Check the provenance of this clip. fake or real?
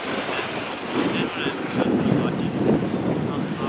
real